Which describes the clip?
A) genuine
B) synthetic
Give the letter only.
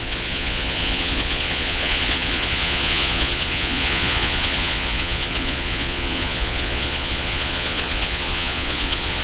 B